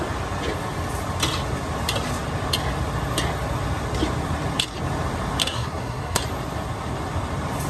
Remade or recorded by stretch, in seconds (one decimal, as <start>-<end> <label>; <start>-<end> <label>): 0.0-5.4 recorded; 5.4-6.2 remade; 6.2-7.7 recorded